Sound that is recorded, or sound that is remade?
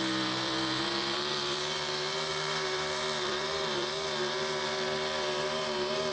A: remade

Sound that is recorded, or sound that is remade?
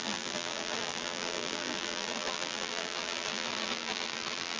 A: remade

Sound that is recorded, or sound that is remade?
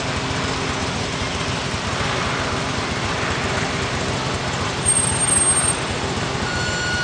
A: recorded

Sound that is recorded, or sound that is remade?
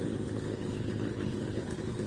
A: remade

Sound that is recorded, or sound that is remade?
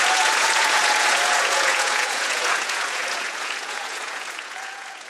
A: remade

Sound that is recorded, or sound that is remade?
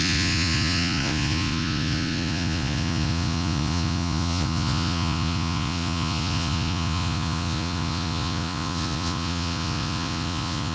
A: remade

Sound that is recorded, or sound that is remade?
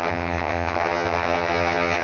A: remade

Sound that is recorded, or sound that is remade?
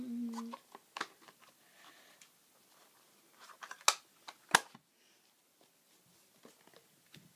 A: recorded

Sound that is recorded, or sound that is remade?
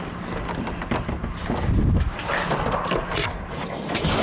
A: recorded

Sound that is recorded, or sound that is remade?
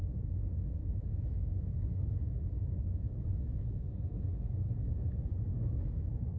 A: remade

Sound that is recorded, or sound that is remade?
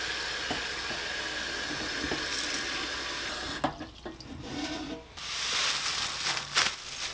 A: recorded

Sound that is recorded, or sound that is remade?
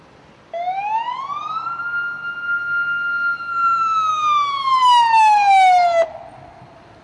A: recorded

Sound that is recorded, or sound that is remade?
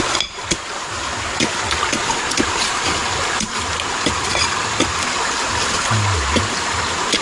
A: recorded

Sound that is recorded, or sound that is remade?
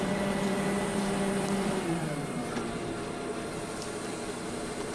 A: remade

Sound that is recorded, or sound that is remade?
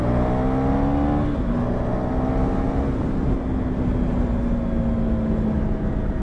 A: recorded